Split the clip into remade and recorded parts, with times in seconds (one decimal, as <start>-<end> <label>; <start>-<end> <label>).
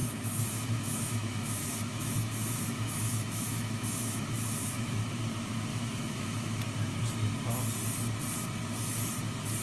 0.0-5.0 remade; 5.0-5.7 recorded; 5.7-6.6 remade; 6.6-9.6 recorded